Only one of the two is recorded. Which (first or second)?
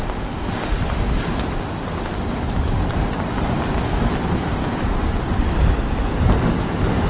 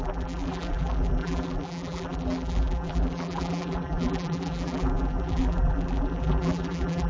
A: first